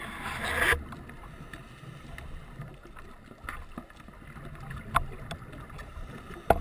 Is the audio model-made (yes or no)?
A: no